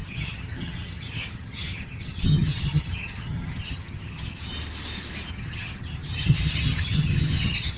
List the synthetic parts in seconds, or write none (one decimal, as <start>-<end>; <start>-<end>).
0.0-4.5; 5.3-7.8